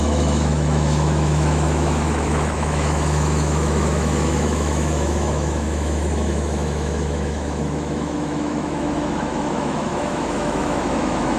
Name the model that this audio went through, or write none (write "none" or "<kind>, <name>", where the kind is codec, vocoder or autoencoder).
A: autoencoder, DAC-VAE